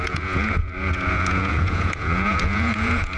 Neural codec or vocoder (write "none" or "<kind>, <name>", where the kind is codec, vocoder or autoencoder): vocoder, Vocos